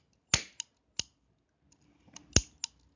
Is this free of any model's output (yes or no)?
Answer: yes